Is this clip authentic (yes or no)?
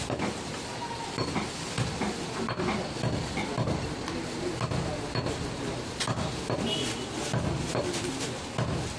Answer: yes